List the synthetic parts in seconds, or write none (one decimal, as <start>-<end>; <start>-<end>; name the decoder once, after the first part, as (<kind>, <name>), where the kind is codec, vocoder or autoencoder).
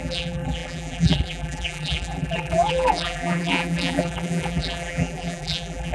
0.0-5.9 (vocoder, BigVGAN v2)